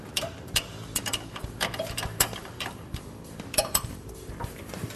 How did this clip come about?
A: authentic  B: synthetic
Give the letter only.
B